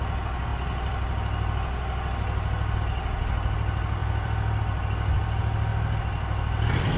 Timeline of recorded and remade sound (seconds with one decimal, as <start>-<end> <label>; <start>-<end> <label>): 0.0-4.0 recorded; 4.0-4.6 remade; 4.6-7.0 recorded